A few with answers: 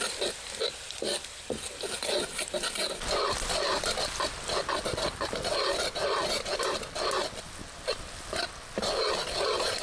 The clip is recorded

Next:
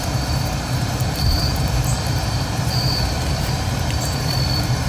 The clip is remade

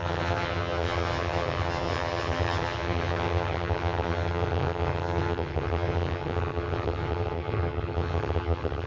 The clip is remade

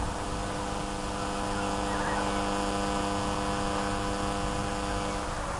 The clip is recorded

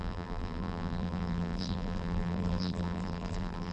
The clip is remade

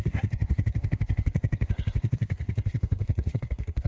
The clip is remade